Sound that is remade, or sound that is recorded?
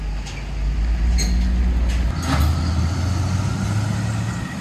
recorded